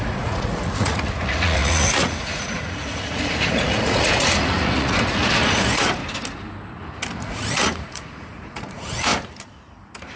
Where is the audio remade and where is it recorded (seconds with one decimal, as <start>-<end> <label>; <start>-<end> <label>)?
0.0-6.0 remade; 6.0-7.2 recorded; 7.2-9.1 remade; 9.1-10.2 recorded